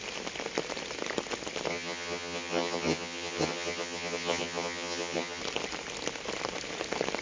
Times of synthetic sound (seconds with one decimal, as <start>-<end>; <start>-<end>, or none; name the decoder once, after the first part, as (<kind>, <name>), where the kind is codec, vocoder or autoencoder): 1.7-5.4 (vocoder, HiFi-GAN)